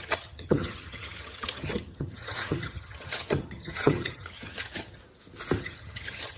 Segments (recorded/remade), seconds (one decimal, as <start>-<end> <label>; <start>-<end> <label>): 0.0-5.0 remade; 5.0-5.6 recorded; 5.6-6.4 remade